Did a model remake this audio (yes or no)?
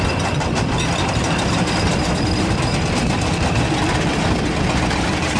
yes